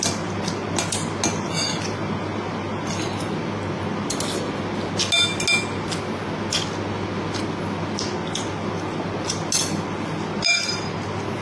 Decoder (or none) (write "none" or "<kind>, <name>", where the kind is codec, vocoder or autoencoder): none